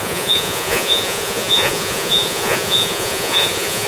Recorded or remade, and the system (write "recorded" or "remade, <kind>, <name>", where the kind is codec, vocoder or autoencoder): remade, vocoder, Vocos